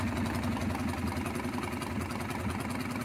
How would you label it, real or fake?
real